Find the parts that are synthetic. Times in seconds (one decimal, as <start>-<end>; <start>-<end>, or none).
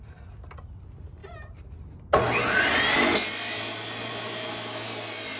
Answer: none